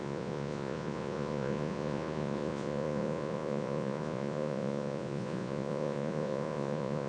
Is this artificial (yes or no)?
yes